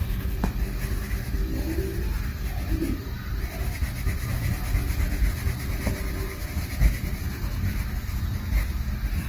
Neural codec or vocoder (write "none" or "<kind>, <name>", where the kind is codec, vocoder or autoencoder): none